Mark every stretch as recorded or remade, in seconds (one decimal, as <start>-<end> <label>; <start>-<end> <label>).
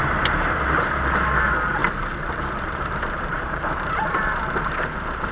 0.0-1.8 recorded; 1.8-5.3 remade